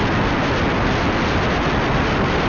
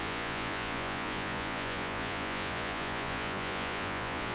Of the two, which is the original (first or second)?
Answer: first